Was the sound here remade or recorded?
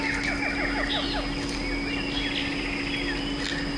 recorded